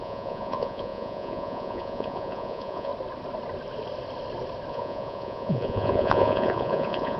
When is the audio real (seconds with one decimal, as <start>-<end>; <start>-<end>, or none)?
2.9-4.7